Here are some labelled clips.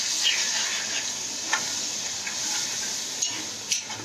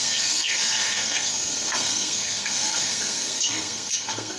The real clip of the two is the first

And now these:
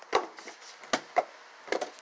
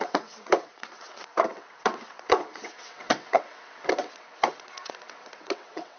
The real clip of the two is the first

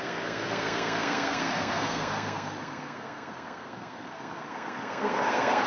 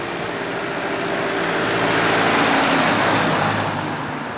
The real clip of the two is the second